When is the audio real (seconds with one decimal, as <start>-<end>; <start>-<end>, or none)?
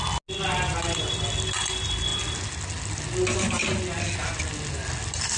0.0-5.4